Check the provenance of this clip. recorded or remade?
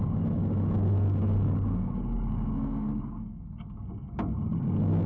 remade